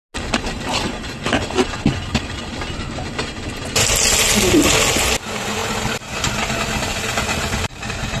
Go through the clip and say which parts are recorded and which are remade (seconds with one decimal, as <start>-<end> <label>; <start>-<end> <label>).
0.0-2.5 recorded; 2.5-3.1 remade; 3.1-5.6 recorded; 5.6-8.2 remade